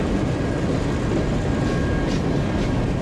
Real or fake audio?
real